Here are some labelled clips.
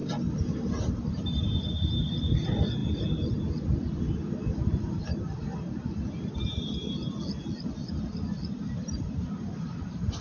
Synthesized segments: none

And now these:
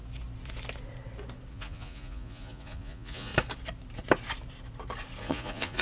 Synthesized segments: 1.5-3.3 (vocoder, Vocos); 5.2-5.8

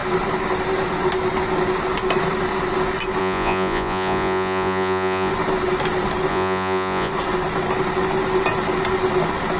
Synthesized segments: 3.2-5.3 (vocoder, Vocos); 6.3-7.1

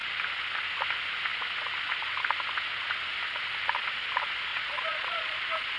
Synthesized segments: 4.5-5.8 (vocoder, Vocos)